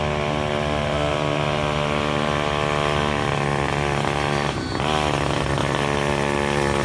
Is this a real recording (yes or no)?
yes